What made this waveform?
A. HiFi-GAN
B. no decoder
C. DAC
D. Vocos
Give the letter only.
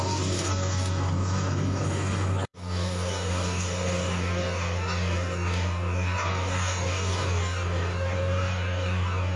C